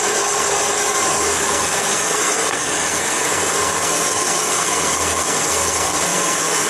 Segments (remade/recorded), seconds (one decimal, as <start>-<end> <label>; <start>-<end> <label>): 0.0-6.7 remade